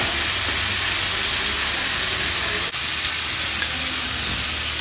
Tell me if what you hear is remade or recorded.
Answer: recorded